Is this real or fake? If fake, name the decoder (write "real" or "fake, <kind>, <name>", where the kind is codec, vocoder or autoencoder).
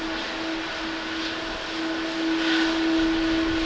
real